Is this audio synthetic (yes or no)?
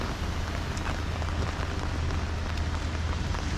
no